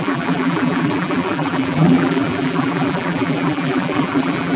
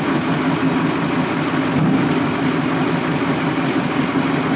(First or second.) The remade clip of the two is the first